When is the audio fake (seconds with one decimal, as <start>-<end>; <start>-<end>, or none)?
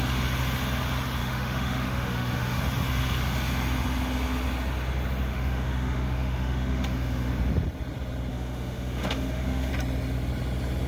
1.2-2.6; 5.3-7.3; 8.3-9.7